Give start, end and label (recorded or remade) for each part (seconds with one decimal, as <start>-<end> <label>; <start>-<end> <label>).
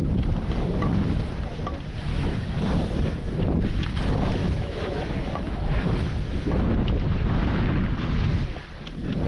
0.0-2.1 recorded; 2.1-2.6 remade; 2.6-4.4 recorded; 4.4-6.9 remade; 6.9-9.3 recorded